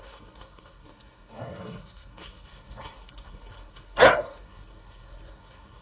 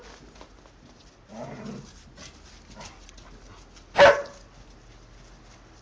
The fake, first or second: first